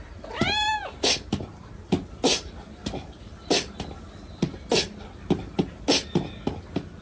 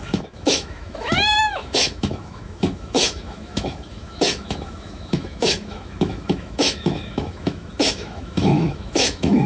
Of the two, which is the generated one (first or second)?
second